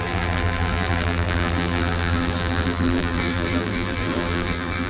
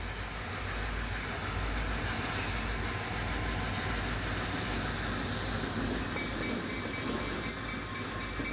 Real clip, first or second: second